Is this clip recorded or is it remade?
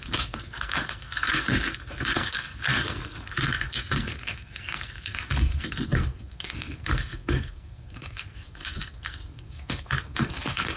remade